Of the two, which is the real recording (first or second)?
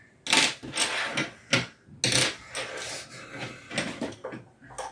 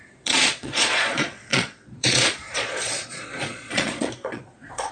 first